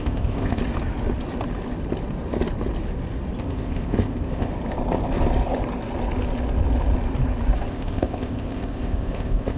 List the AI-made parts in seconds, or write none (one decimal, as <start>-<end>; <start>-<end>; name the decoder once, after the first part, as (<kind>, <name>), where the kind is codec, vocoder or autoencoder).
0.0-0.6 (codec, ZipCodec); 3.4-4.5; 7.7-9.6